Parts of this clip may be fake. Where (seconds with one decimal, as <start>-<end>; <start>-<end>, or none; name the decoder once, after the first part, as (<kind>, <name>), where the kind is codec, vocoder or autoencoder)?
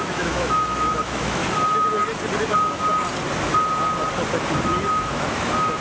0.0-1.4 (autoencoder, DAC-VAE); 4.9-5.8